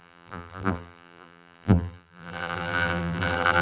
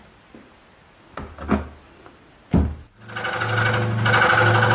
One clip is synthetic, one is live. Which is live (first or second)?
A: second